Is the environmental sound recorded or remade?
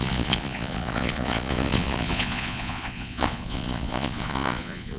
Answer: remade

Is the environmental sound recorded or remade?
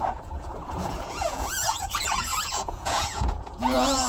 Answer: remade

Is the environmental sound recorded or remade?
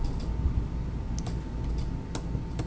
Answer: recorded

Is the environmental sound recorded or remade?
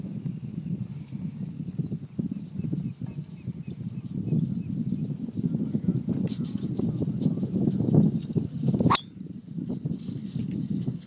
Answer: recorded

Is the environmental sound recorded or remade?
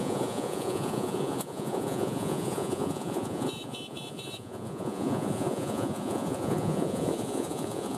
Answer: remade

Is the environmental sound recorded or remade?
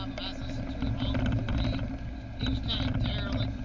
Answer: recorded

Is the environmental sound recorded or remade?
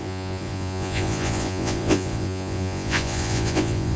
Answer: remade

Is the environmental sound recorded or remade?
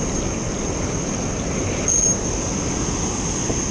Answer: recorded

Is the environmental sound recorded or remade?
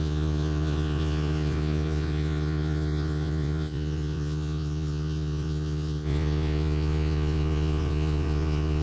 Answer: remade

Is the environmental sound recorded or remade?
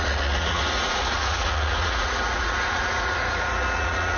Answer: remade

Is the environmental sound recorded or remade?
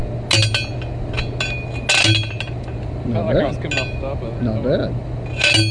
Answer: recorded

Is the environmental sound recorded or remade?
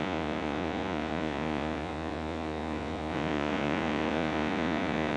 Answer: remade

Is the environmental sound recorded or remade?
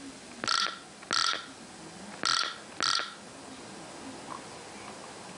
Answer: recorded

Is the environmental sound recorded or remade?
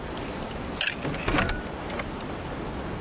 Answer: recorded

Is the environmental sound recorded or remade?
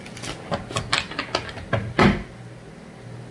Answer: recorded